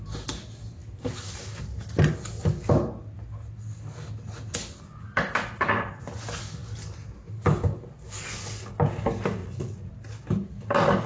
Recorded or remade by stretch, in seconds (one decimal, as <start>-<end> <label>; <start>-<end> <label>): 0.0-9.4 recorded; 9.4-9.9 remade; 9.9-11.1 recorded